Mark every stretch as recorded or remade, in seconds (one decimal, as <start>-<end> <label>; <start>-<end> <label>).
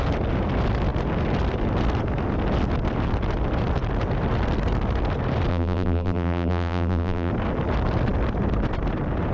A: 0.0-5.5 recorded; 5.5-7.3 remade; 7.3-9.3 recorded